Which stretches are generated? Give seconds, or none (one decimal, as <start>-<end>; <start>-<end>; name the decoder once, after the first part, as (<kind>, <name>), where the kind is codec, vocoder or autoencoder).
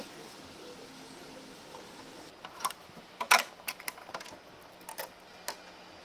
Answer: 2.8-3.5 (autoencoder, DAC-VAE)